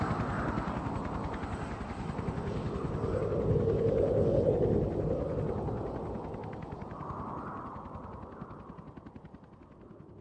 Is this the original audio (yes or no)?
yes